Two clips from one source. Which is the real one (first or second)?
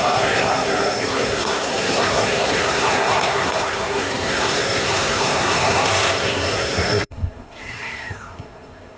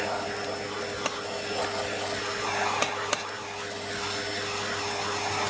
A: second